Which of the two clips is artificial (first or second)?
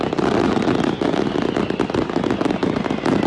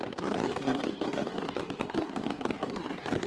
second